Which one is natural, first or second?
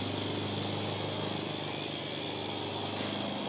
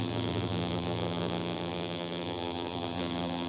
first